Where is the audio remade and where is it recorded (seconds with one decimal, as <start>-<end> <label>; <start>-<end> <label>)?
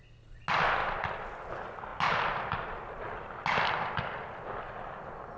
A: 0.0-5.4 recorded